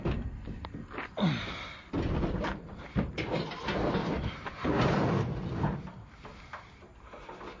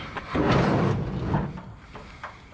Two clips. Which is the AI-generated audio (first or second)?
first